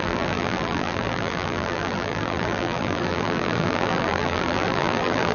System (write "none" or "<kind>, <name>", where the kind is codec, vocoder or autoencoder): vocoder, BigVGAN v2